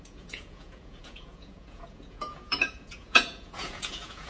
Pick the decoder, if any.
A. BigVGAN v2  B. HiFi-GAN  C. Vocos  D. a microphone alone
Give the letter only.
C